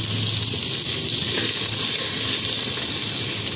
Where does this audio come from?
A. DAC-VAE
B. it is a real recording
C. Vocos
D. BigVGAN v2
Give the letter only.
B